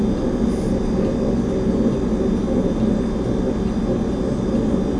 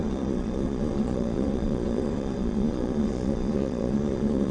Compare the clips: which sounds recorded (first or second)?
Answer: first